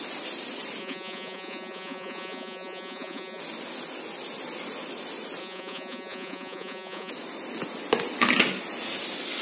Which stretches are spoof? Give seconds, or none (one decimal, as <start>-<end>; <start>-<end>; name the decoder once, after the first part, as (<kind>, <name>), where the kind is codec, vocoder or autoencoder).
0.8-3.4 (vocoder, Vocos); 5.4-7.1